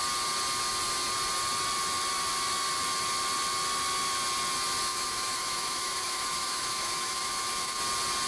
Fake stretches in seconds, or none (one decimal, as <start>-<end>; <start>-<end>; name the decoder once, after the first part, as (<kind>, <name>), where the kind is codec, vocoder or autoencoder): 4.9-7.8 (autoencoder, DAC-VAE)